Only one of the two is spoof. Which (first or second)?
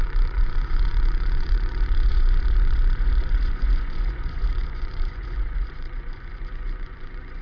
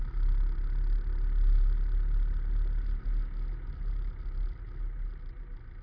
first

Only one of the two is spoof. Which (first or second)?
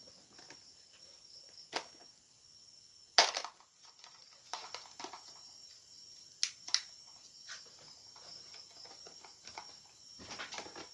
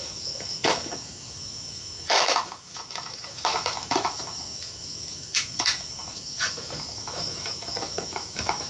second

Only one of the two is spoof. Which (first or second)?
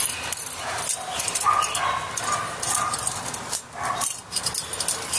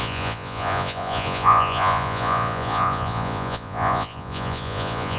second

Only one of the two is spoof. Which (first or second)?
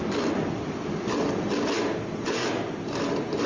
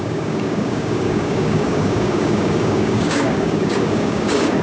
second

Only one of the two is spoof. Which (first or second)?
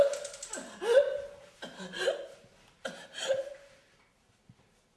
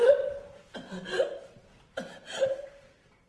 second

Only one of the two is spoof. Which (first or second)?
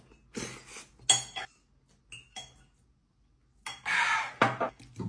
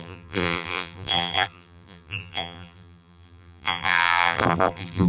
second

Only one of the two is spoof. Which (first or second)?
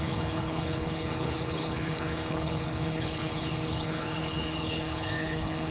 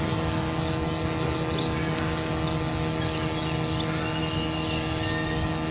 first